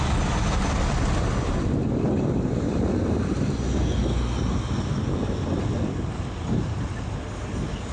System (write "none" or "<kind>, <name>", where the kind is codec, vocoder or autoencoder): none